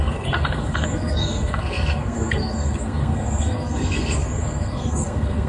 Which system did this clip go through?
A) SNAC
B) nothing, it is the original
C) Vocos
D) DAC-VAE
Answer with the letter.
A